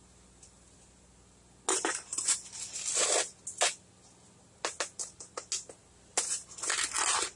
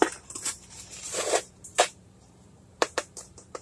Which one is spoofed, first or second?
second